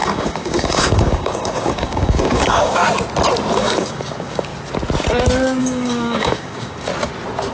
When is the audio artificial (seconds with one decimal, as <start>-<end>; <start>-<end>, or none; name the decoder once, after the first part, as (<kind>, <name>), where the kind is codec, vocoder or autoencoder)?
0.0-2.8 (codec, DAC); 3.5-4.5; 5.6-6.9